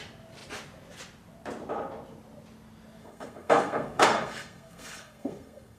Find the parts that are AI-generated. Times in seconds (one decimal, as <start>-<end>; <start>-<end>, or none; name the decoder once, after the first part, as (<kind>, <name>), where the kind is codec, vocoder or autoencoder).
3.0-5.8 (codec, SNAC)